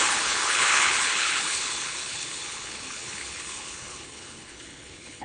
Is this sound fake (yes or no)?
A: yes